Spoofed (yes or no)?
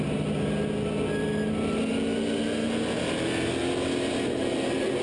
no